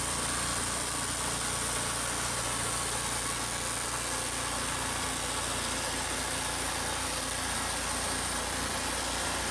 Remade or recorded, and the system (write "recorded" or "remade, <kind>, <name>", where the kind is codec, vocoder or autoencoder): recorded